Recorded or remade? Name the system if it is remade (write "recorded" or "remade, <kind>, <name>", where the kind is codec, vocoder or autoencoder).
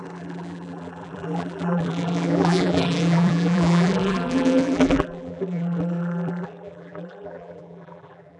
remade, vocoder, BigVGAN v2